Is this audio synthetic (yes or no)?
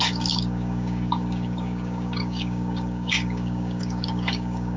yes